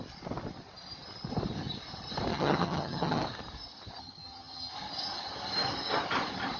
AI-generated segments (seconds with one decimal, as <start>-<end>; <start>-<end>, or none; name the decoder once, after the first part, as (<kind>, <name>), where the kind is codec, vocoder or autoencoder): 2.3-3.2 (vocoder, HiFi-GAN); 4.0-4.7